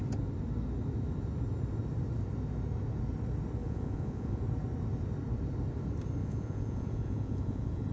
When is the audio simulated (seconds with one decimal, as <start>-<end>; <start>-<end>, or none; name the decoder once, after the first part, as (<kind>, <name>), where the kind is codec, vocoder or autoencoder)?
3.6-4.4 (vocoder, Vocos); 6.2-7.9